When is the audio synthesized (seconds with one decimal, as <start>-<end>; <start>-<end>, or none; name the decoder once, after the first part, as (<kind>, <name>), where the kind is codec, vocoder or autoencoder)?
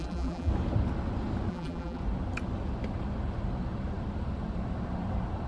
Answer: 0.0-0.5 (vocoder, BigVGAN v2); 1.5-2.0